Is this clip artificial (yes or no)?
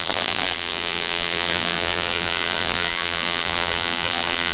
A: yes